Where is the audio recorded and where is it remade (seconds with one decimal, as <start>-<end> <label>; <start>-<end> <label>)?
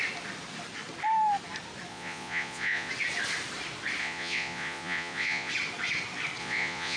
0.0-1.9 recorded; 1.9-2.9 remade; 2.9-4.0 recorded; 4.0-5.5 remade; 5.5-6.4 recorded; 6.4-7.0 remade